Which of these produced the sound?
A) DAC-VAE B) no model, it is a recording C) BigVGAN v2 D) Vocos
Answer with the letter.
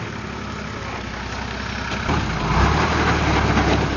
B